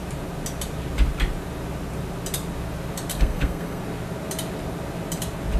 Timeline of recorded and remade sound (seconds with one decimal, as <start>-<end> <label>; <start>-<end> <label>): 0.0-3.1 recorded; 3.1-3.8 remade; 3.8-5.6 recorded